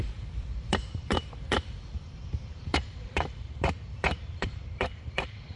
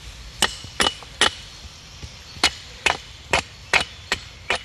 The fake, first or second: first